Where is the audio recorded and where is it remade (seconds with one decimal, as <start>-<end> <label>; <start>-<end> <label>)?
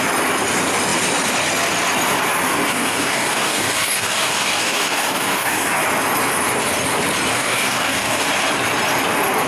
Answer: 0.0-2.7 recorded; 2.7-5.8 remade; 5.8-7.3 recorded; 7.3-8.3 remade; 8.3-9.5 recorded